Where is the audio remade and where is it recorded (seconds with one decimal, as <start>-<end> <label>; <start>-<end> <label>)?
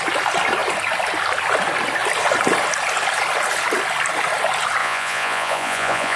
0.0-4.8 recorded; 4.8-6.2 remade